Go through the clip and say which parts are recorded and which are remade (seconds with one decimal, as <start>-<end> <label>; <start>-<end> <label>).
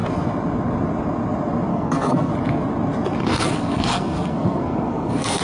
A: 0.0-1.7 recorded; 1.7-2.3 remade; 2.3-3.2 recorded; 3.2-5.4 remade